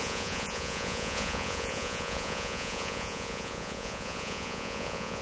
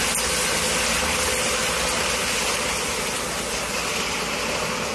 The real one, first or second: second